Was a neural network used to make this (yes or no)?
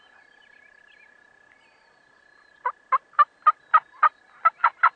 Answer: no